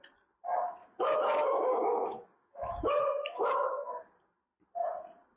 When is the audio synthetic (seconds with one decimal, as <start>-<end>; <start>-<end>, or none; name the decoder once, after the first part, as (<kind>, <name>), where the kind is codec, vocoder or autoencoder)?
0.8-4.0 (autoencoder, DAC-VAE)